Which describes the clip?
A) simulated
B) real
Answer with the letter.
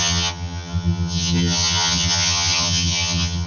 A